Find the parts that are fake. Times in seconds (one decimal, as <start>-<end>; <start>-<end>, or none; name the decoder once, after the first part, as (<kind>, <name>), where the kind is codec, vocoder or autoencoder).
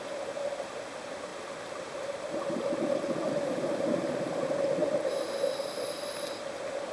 none